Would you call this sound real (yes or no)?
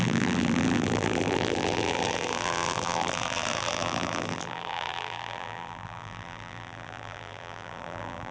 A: no